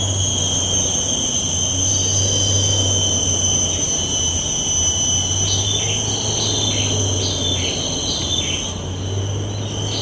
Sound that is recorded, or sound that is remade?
recorded